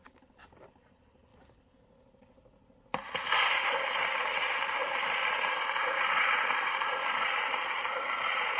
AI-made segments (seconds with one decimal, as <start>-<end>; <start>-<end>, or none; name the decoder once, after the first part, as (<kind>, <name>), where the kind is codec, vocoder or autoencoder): 0.0-1.3 (vocoder, BigVGAN v2); 3.4-8.6